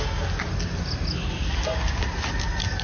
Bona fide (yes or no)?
yes